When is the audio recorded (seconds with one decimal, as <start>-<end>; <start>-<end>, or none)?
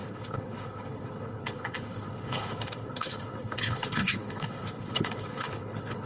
none